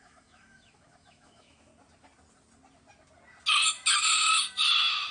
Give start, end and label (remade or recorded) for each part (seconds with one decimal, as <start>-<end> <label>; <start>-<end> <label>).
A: 0.0-1.7 remade; 1.7-5.1 recorded